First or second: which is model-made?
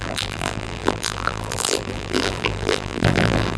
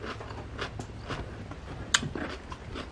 first